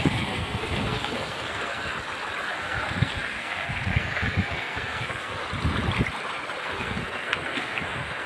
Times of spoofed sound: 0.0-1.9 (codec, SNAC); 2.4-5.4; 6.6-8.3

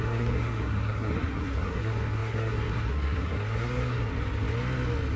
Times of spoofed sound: 0.0-4.1 (codec, SNAC)